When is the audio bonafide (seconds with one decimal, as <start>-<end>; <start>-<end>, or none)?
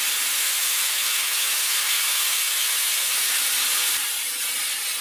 0.0-0.4; 3.4-5.0